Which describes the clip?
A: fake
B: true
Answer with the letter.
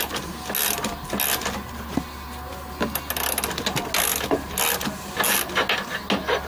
B